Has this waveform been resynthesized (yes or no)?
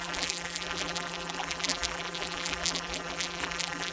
yes